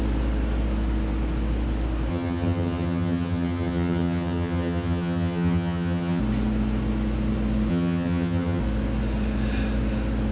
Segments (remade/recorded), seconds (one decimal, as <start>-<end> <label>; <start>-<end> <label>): 0.0-2.1 recorded; 2.1-6.2 remade; 6.2-7.7 recorded; 7.7-8.6 remade; 8.6-10.3 recorded